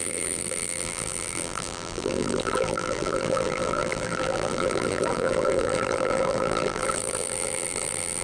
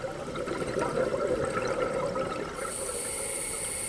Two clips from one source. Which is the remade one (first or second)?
first